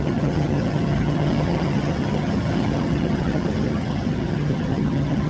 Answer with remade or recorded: remade